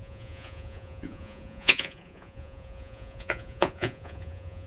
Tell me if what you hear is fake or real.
fake